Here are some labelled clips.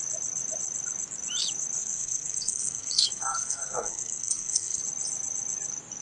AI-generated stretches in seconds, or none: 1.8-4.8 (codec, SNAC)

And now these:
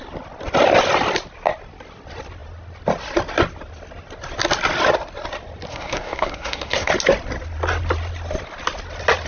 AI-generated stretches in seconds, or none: 5.7-6.9 (codec, SNAC)

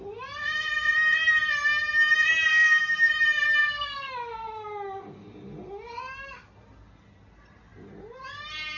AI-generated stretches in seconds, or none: 2.5-3.1 (codec, SNAC); 3.6-4.1

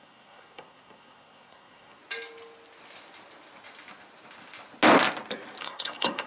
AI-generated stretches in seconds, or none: 0.0-2.0 (codec, SNAC); 5.6-6.3

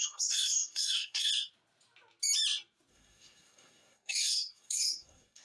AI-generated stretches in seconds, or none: 0.0-1.3 (codec, SNAC); 2.9-5.4

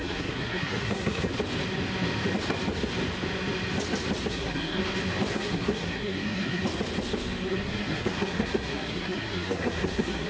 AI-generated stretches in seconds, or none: 0.0-1.3 (codec, SNAC); 4.3-4.8; 5.3-6.6; 7.5-10.3

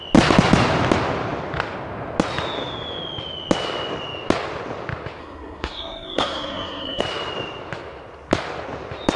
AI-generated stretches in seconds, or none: 5.2-7.0 (codec, SNAC)